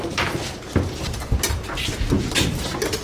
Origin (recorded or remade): recorded